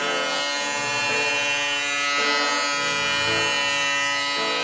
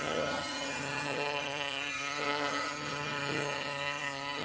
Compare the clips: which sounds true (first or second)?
first